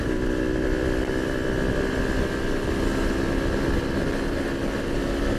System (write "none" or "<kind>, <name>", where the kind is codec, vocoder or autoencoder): none